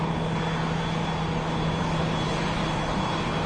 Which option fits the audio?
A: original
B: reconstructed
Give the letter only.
A